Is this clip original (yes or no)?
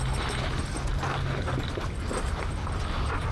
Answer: yes